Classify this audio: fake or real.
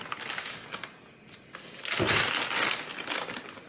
real